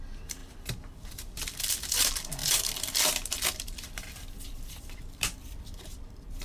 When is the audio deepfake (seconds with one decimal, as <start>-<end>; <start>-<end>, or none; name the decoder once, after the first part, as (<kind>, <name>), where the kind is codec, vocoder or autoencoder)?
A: 0.0-0.4 (vocoder, BigVGAN v2); 1.1-6.4

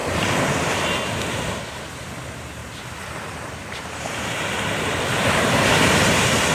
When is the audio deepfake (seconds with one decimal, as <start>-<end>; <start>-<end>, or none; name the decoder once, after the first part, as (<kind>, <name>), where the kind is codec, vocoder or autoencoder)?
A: none

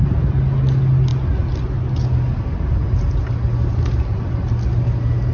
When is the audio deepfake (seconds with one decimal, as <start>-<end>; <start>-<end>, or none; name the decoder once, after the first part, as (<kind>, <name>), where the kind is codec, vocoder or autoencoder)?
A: none

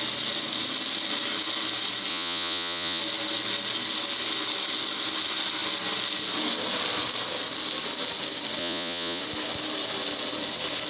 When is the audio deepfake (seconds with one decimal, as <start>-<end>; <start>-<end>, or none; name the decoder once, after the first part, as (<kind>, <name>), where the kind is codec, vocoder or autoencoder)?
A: 2.1-3.0 (vocoder, Vocos); 8.6-9.2

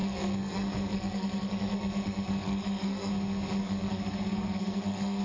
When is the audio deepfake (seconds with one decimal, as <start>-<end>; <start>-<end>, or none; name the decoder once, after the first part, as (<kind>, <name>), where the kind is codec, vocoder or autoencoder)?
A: 0.0-3.1 (codec, SNAC); 3.6-5.2